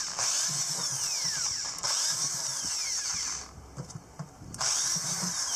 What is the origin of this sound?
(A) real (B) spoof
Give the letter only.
B